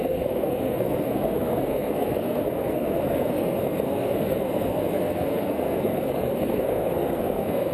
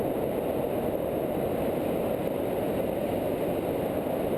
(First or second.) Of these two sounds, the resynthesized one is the first